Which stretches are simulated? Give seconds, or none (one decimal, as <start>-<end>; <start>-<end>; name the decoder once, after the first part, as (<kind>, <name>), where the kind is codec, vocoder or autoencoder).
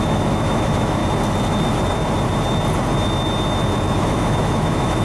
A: 0.0-1.0 (autoencoder, DAC-VAE); 4.0-5.0